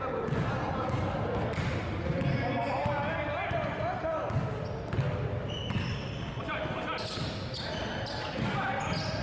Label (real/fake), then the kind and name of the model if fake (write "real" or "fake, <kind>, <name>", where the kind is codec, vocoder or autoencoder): real